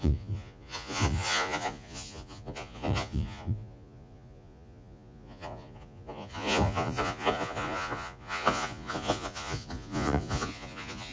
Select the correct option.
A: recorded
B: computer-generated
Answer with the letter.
B